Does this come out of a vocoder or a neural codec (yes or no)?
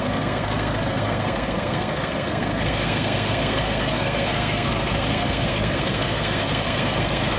yes